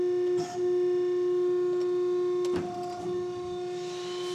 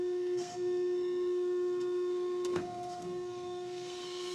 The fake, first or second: second